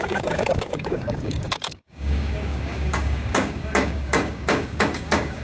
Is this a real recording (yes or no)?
no